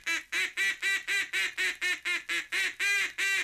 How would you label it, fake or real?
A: real